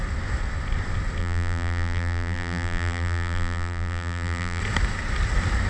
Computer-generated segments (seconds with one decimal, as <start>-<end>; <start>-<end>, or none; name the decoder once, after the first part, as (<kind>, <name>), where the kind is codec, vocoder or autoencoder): 1.2-4.6 (vocoder, BigVGAN v2)